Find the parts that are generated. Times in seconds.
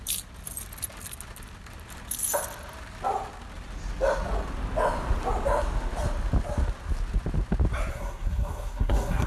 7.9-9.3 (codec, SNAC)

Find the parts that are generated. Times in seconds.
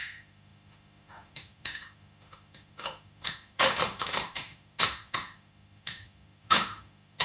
0.0-7.2 (autoencoder, DAC-VAE)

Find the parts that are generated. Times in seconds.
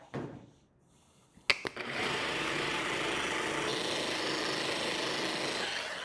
1.5-2.8 (vocoder, BigVGAN v2)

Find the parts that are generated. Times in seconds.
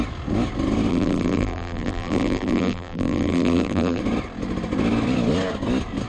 0.9-4.0 (vocoder, BigVGAN v2)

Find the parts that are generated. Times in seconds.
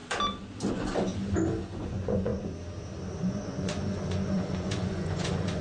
0.7-1.1 (vocoder, Vocos); 1.6-2.3; 3.2-5.6